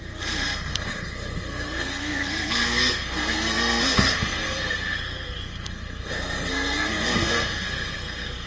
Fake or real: fake